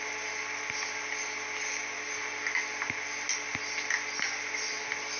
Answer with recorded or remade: recorded